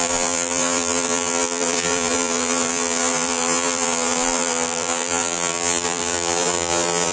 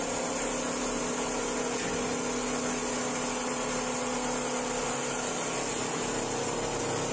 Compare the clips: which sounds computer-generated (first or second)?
first